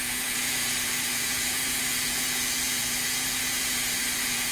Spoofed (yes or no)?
yes